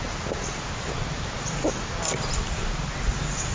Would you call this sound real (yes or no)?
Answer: yes